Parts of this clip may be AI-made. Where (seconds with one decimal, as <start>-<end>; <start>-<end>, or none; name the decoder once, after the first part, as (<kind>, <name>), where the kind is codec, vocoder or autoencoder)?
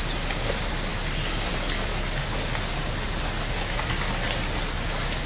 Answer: none